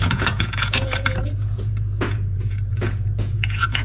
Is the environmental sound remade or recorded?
remade